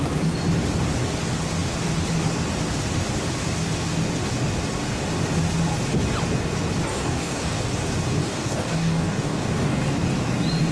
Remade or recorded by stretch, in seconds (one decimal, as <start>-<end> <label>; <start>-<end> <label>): 0.0-6.9 recorded; 6.9-7.6 remade; 7.6-8.2 recorded; 8.2-9.9 remade; 9.9-10.7 recorded